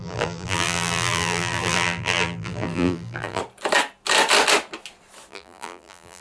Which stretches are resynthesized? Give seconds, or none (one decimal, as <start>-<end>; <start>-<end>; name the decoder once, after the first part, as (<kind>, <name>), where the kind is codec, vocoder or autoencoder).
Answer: 0.0-3.4 (vocoder, BigVGAN v2); 5.3-6.2